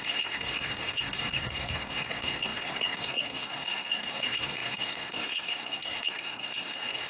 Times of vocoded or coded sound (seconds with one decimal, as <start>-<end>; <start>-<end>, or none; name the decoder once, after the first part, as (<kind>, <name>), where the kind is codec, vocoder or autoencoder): 0.0-7.1 (codec, SNAC)